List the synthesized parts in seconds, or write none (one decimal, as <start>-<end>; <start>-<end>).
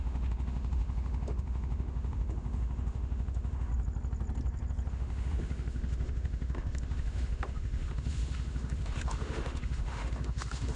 0.0-3.7; 4.9-10.8